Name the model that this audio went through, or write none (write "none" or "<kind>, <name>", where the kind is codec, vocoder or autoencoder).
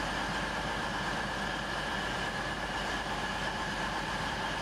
none